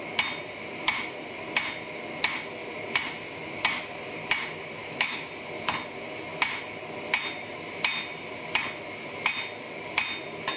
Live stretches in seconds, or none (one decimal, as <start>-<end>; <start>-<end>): 0.0-4.8; 5.3-10.6